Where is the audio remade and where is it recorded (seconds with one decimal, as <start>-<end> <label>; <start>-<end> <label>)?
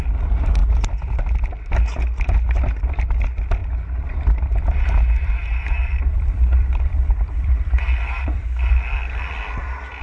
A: 0.0-0.6 recorded; 0.6-1.6 remade; 1.6-3.6 recorded; 3.6-8.8 remade; 8.8-10.0 recorded